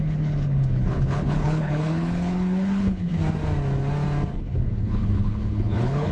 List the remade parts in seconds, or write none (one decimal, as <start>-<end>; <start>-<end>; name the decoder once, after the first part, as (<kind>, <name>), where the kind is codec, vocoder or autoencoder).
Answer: 0.0-3.1 (codec, HILCodec); 4.3-6.1